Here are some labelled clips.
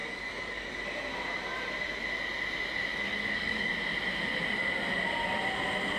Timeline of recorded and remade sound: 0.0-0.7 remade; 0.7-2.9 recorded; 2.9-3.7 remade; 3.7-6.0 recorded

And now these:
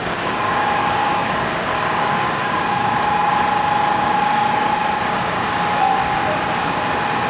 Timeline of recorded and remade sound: 0.0-3.3 remade; 3.3-3.9 recorded; 3.9-6.2 remade; 6.2-7.3 recorded

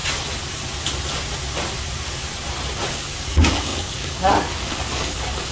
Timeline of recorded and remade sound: 0.0-2.9 recorded; 2.9-5.5 remade

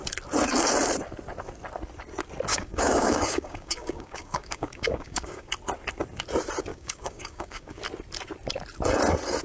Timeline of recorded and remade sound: 0.0-2.5 recorded; 2.5-5.5 remade; 5.5-6.7 recorded; 6.7-7.8 remade; 7.8-9.4 recorded

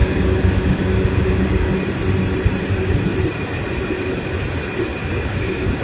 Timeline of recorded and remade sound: 0.0-1.7 remade; 1.7-5.0 recorded; 5.0-5.8 remade